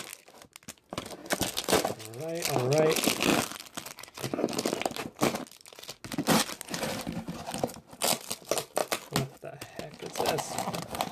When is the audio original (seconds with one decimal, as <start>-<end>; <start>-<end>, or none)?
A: 0.0-11.1